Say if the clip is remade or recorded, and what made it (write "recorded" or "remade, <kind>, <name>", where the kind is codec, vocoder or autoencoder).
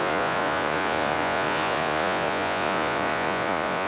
remade, vocoder, Vocos